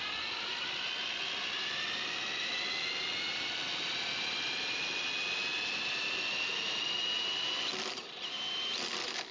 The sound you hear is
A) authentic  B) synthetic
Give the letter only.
A